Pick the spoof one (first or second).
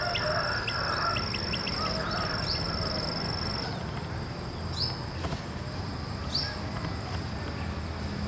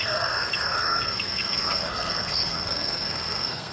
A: second